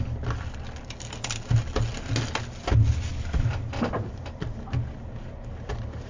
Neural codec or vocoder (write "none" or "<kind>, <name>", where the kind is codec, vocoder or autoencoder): none